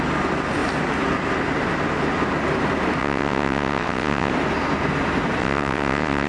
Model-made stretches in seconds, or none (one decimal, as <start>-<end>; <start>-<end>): 3.0-4.3; 5.4-6.3